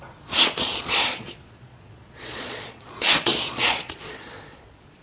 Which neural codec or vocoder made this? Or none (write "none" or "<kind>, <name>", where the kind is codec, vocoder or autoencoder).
vocoder, Vocos